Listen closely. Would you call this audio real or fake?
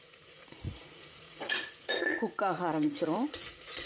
fake